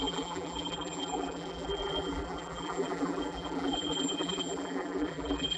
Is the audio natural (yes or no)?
no